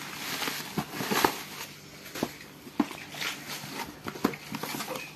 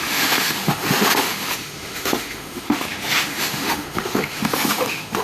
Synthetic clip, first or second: second